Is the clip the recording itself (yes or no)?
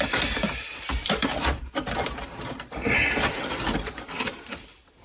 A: no